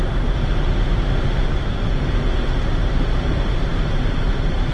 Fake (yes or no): yes